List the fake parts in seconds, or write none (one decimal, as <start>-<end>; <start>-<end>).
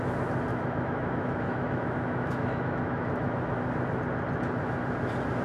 0.5-3.5